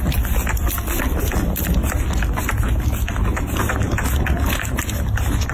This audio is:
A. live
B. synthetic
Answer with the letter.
A